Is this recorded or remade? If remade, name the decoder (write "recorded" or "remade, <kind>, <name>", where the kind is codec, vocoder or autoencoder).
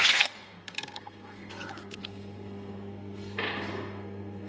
remade, codec, SNAC